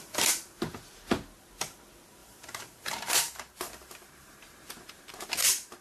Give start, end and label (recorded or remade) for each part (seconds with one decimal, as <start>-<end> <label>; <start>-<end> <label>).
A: 0.0-2.2 recorded; 2.2-5.8 remade